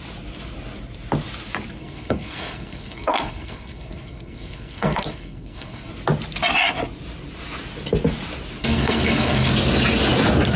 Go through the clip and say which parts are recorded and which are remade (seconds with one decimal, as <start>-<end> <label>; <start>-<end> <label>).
0.0-1.8 recorded; 1.8-5.9 remade; 5.9-8.6 recorded; 8.6-9.5 remade; 9.5-10.6 recorded